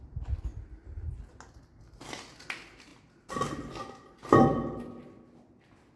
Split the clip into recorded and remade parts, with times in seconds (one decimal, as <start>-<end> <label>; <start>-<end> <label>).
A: 0.0-6.0 recorded